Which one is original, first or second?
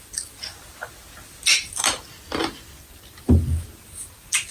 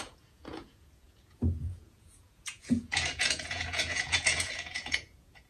first